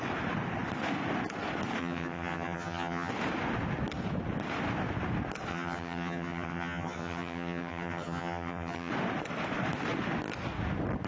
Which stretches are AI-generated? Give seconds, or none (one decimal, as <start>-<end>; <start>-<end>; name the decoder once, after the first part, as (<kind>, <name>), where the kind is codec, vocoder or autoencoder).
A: 1.8-3.1 (vocoder, HiFi-GAN); 5.5-8.9